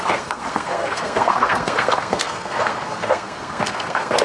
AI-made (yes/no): yes